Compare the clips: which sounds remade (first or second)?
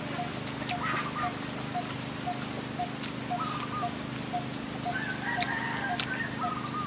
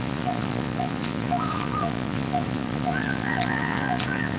second